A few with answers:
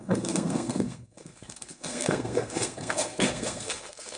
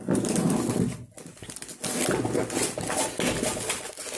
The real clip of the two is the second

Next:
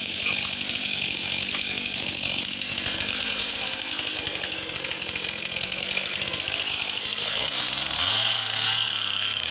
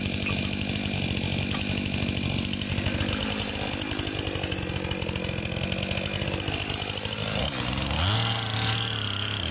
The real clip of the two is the second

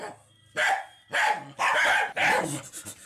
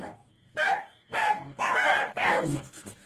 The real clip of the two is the first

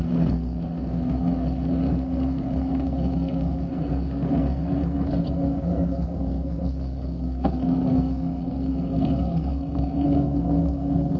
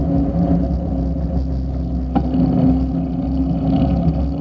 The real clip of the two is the second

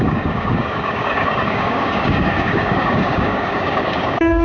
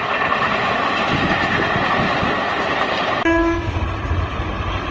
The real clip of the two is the second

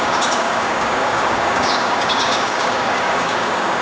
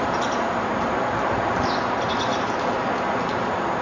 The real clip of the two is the second